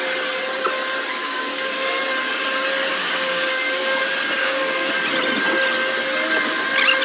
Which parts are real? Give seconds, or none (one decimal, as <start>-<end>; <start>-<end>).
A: 0.0-1.2; 2.0-2.9; 4.0-4.4; 4.9-7.0